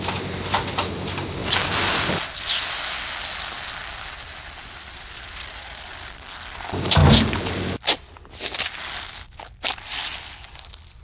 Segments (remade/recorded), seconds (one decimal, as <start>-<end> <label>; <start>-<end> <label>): 0.0-11.0 recorded